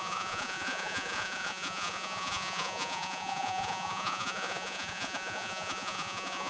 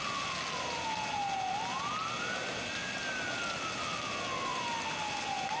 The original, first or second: second